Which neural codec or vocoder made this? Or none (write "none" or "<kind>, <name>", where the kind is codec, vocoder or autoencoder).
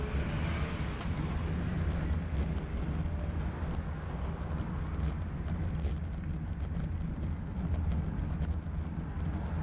none